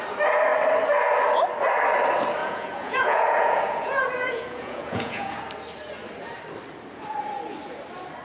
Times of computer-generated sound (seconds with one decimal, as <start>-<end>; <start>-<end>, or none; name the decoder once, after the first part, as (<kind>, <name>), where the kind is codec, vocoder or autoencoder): 2.4-5.4 (vocoder, Vocos)

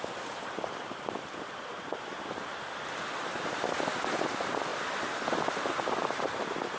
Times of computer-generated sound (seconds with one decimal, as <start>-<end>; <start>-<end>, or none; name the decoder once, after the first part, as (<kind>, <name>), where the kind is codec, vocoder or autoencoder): none

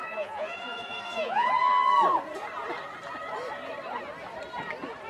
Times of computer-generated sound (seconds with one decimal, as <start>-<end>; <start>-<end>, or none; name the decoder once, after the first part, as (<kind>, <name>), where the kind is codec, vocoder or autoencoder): 0.0-1.5 (vocoder, Vocos)

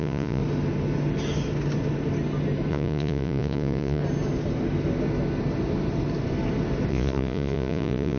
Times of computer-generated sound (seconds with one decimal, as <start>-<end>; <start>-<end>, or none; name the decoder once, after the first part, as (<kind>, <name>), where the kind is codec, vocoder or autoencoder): 0.0-0.4 (vocoder, Vocos); 2.7-4.0; 6.9-8.2

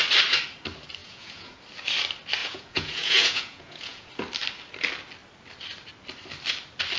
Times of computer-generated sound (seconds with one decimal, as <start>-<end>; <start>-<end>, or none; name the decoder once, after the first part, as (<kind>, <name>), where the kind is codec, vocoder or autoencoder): 1.0-1.6 (vocoder, Vocos); 2.4-4.1

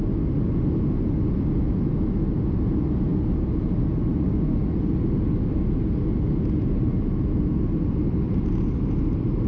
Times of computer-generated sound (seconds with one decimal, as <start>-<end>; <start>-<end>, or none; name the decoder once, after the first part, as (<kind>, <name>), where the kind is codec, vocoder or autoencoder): none

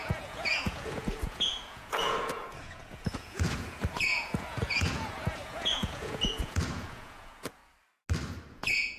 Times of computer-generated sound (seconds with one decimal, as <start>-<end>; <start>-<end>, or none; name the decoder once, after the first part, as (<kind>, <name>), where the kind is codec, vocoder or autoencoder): 0.0-7.6 (vocoder, Vocos); 8.5-9.0